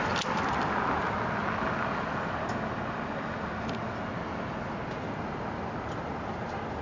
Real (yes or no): yes